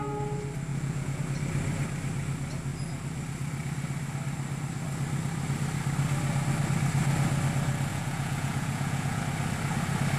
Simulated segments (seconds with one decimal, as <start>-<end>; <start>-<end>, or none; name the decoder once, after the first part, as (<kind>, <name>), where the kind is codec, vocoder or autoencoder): 0.7-1.2 (vocoder, Vocos); 7.9-9.2